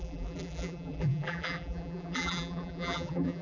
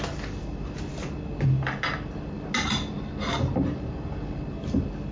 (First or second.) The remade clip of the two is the first